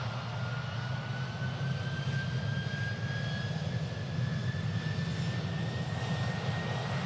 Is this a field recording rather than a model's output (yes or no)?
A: yes